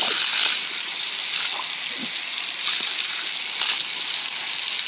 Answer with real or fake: real